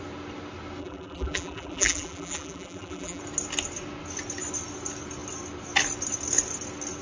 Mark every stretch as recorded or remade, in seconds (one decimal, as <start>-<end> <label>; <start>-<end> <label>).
0.0-0.8 recorded; 0.8-3.2 remade; 3.2-7.0 recorded